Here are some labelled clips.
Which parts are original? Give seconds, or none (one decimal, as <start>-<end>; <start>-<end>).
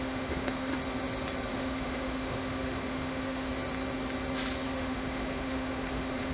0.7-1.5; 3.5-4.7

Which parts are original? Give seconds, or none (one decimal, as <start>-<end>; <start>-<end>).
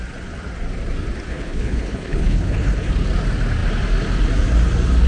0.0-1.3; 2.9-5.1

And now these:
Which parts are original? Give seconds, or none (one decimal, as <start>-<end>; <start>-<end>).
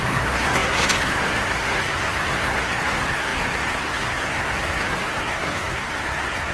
none